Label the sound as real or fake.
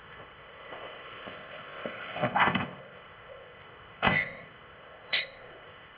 fake